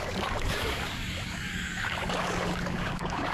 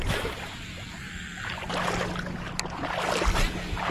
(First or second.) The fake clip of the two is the first